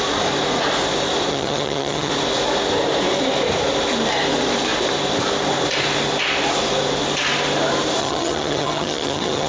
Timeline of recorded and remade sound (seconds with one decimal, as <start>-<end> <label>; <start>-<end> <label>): 0.0-1.3 recorded; 1.3-2.1 remade; 2.1-8.0 recorded; 8.0-9.5 remade